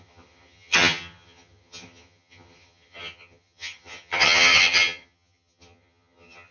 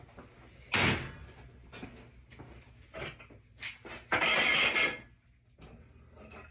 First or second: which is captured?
second